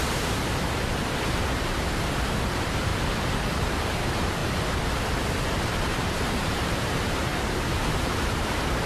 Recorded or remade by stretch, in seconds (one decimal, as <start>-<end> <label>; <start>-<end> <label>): 0.0-2.9 remade; 2.9-3.8 recorded; 3.8-4.4 remade; 4.4-5.6 recorded; 5.6-8.9 remade